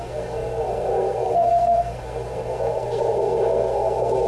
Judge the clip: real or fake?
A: fake